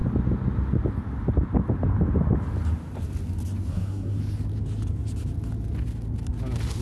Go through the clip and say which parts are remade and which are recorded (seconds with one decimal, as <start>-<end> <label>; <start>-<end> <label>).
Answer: 0.0-3.7 recorded; 3.7-4.2 remade; 4.2-6.8 recorded